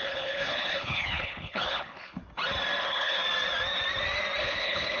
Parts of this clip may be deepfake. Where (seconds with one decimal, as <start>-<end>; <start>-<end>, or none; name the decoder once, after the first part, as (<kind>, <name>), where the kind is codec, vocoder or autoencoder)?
0.0-2.2 (codec, HILCodec); 2.8-3.2; 4.4-5.0